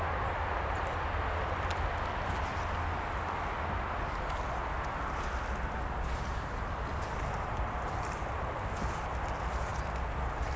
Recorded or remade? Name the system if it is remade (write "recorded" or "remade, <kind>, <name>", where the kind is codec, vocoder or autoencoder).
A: recorded